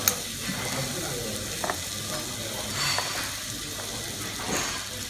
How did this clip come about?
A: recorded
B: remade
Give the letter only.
A